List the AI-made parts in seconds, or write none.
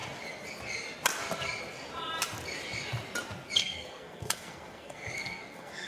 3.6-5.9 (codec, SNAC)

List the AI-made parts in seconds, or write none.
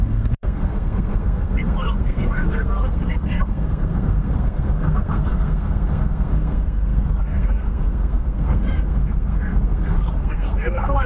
0.0-11.1 (codec, SNAC)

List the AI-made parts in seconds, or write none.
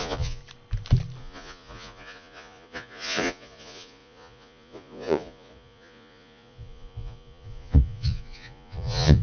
0.0-0.4 (vocoder, Vocos); 1.2-9.2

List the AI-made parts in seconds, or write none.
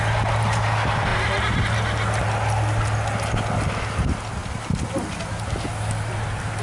none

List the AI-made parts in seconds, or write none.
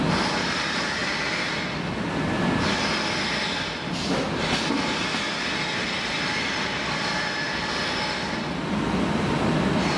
1.0-4.7 (vocoder, BigVGAN v2); 6.1-7.1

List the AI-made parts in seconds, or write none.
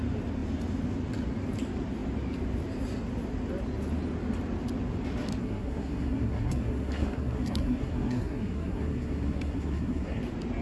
5.4-10.2 (codec, SNAC)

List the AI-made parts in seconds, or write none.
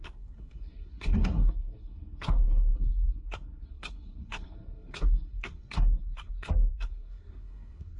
0.0-8.0 (codec, SNAC)